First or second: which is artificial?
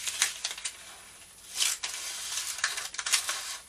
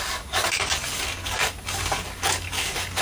second